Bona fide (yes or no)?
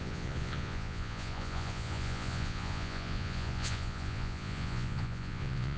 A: no